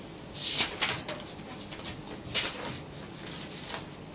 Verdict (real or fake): real